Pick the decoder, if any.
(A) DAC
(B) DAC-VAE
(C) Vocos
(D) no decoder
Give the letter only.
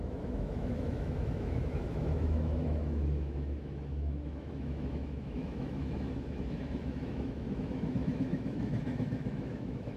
B